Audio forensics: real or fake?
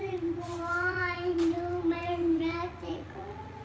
fake